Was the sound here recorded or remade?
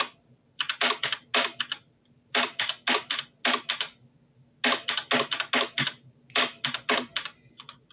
recorded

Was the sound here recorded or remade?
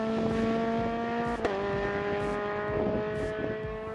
recorded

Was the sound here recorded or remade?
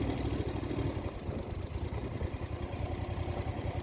recorded